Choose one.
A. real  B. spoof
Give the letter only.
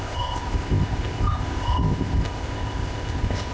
B